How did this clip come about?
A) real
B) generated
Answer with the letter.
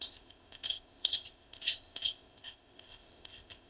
B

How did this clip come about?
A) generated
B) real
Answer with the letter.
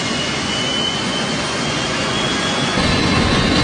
A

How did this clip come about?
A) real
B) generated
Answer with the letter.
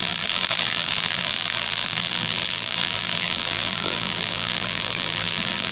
B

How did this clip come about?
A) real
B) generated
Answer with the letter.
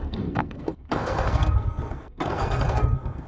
B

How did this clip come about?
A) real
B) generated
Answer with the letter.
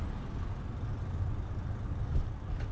A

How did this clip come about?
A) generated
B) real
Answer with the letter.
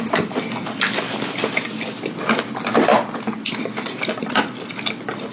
B